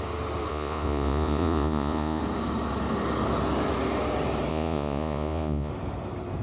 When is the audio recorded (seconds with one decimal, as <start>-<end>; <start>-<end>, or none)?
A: 0.0-0.5; 2.2-4.5; 5.7-6.4